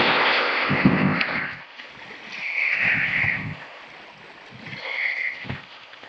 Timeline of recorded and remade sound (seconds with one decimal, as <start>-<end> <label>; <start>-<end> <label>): 0.0-1.9 remade; 1.9-2.4 recorded; 2.4-3.8 remade; 3.8-4.8 recorded; 4.8-6.1 remade